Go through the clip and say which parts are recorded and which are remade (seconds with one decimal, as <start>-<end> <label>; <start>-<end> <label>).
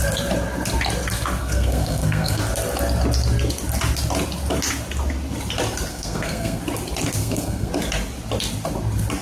0.0-1.4 recorded; 1.4-2.4 remade; 2.4-5.9 recorded; 5.9-6.6 remade; 6.6-7.2 recorded; 7.2-7.7 remade; 7.7-9.2 recorded